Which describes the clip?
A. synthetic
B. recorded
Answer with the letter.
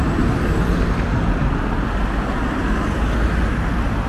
B